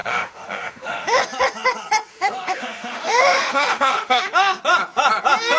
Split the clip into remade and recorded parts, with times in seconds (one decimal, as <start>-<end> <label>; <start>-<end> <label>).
0.0-1.2 remade; 1.2-2.1 recorded; 2.1-4.6 remade; 4.6-5.6 recorded